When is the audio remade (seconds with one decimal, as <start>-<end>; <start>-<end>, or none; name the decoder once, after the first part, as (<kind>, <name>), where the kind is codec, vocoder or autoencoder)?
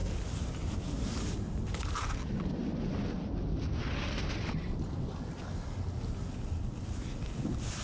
none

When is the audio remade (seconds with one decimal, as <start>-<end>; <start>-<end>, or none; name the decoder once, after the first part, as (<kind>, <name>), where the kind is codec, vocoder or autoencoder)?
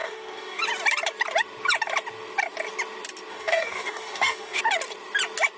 0.0-0.6 (codec, DAC); 3.3-4.6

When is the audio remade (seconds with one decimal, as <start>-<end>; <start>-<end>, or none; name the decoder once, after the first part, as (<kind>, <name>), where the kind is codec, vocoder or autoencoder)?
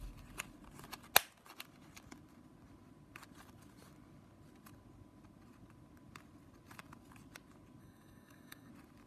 7.8-8.7 (codec, DAC)